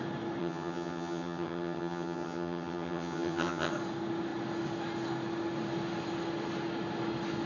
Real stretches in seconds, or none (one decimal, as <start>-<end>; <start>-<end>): 0.0-0.4; 3.7-7.5